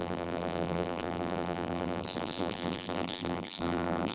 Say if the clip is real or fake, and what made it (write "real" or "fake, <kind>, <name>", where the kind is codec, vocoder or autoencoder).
fake, vocoder, BigVGAN v2